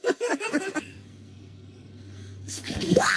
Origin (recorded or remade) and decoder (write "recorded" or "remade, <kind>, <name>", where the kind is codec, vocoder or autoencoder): remade, codec, SNAC